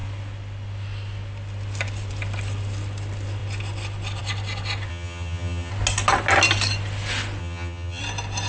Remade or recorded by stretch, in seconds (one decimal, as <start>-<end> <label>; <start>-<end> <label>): 0.0-4.9 recorded; 4.9-5.7 remade; 5.7-7.4 recorded; 7.4-8.0 remade; 8.0-8.5 recorded